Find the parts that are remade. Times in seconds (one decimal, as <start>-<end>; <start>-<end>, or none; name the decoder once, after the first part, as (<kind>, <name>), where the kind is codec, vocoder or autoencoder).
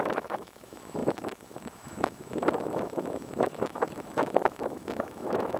0.0-5.6 (autoencoder, DAC-VAE)